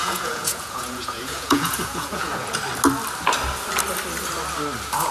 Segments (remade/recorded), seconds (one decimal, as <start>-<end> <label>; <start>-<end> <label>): 0.0-2.6 remade; 2.6-5.1 recorded